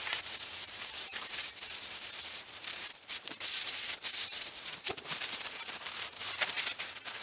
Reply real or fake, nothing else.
fake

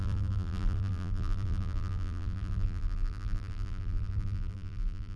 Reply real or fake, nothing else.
fake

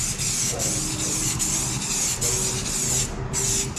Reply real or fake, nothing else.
real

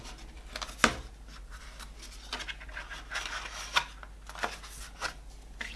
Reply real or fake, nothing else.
real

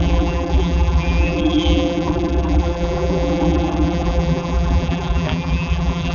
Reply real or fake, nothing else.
fake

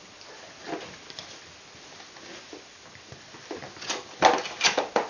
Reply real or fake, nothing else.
real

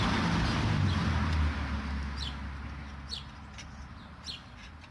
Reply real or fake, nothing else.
real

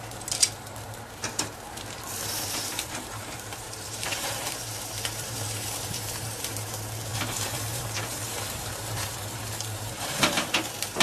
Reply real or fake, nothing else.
fake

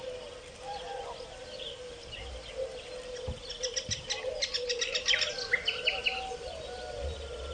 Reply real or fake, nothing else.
real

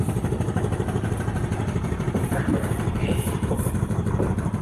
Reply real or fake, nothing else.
fake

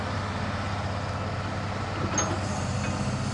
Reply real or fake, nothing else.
real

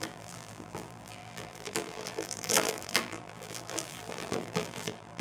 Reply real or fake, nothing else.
fake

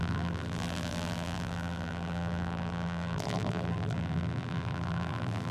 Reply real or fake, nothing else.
fake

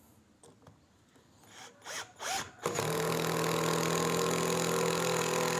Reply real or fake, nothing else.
real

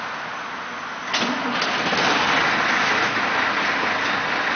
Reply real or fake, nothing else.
real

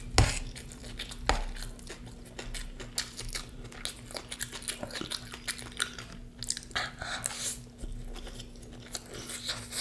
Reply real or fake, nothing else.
real